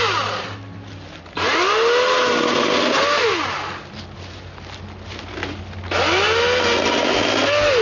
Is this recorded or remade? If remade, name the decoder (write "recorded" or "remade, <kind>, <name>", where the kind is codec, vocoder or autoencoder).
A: recorded